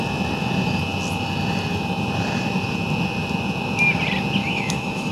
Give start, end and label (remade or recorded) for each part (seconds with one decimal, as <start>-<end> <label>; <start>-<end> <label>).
0.0-4.4 recorded; 4.4-5.1 remade